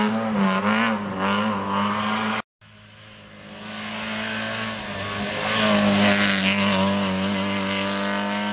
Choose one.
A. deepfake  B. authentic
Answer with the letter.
B